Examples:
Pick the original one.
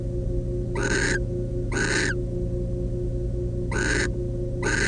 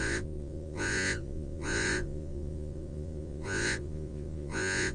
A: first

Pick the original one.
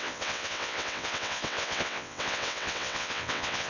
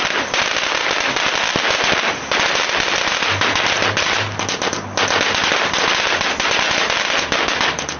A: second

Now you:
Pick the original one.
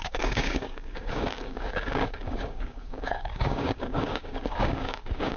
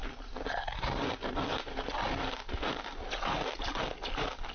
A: second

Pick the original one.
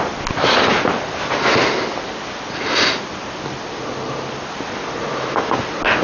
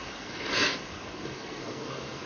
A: first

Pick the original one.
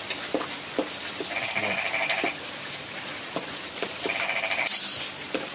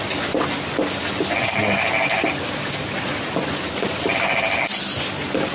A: second